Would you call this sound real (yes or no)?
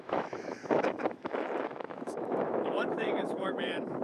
no